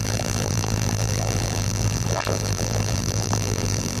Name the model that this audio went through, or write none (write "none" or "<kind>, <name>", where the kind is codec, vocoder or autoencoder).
vocoder, BigVGAN v2